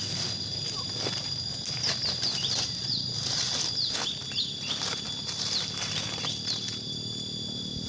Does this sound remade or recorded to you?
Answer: recorded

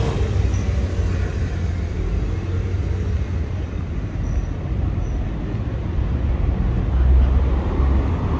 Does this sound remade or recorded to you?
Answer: recorded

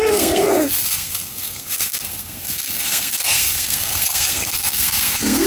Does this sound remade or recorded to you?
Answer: remade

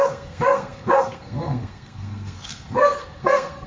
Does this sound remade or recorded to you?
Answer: remade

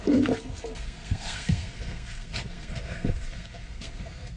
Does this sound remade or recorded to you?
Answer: remade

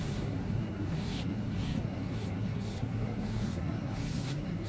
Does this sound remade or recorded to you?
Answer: remade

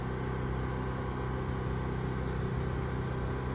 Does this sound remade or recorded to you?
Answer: recorded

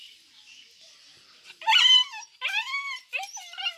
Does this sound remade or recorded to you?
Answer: recorded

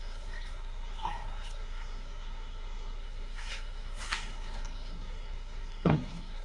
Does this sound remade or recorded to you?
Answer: remade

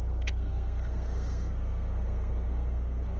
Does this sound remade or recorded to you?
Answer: remade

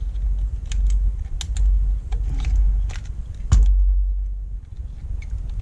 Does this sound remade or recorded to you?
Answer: recorded